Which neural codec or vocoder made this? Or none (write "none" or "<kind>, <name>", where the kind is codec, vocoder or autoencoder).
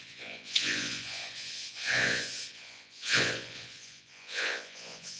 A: vocoder, Vocos